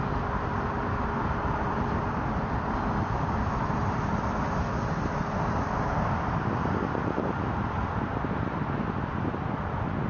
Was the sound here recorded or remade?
recorded